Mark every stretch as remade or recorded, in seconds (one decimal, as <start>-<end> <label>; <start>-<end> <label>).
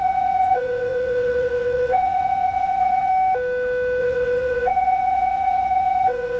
0.0-3.1 remade; 3.1-4.0 recorded; 4.0-6.4 remade